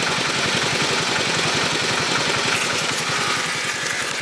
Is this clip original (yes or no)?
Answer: no